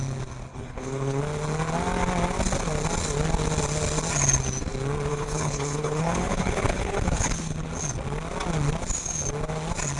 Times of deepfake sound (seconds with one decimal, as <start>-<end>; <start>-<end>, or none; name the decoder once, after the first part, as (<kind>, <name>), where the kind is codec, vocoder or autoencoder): 0.5-1.2 (codec, HILCodec); 5.1-7.7